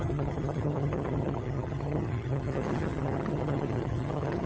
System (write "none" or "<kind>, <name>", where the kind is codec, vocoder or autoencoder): vocoder, HiFi-GAN